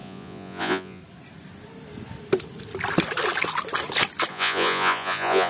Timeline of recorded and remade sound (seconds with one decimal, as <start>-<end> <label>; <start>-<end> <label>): 0.0-1.0 remade; 1.0-4.3 recorded; 4.3-5.5 remade